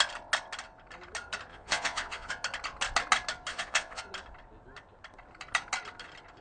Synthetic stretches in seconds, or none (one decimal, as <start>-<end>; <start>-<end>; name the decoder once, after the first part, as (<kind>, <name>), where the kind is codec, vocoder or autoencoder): 1.5-2.3 (vocoder, Vocos); 3.5-4.0